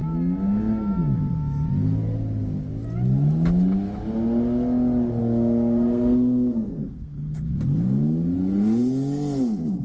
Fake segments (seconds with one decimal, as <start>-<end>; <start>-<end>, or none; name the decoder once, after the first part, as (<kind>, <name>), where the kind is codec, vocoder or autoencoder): 5.2-7.5 (codec, SNAC)